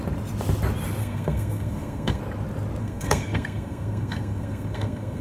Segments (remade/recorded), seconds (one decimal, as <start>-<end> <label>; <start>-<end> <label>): 0.0-1.0 recorded; 1.0-2.2 remade; 2.2-2.8 recorded; 2.8-5.2 remade